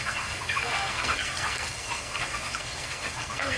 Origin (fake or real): fake